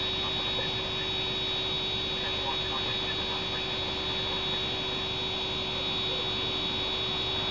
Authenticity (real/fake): real